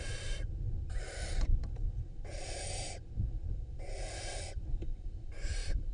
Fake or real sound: real